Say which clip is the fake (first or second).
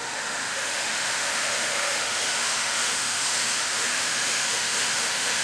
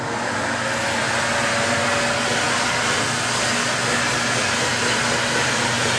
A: first